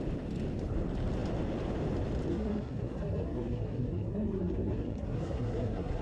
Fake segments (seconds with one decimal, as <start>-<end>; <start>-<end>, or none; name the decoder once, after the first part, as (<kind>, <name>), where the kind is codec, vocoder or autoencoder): 2.3-6.0 (codec, SNAC)